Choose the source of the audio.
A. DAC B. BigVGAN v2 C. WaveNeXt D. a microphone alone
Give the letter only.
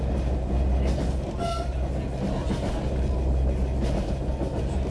D